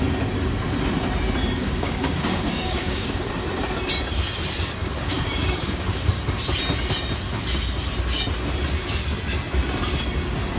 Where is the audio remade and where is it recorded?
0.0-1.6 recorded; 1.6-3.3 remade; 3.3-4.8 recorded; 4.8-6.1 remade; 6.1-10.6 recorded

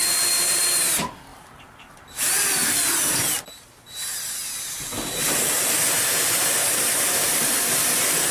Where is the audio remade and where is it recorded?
0.0-0.6 remade; 0.6-1.3 recorded; 1.3-5.5 remade; 5.5-6.6 recorded; 6.6-7.3 remade; 7.3-8.3 recorded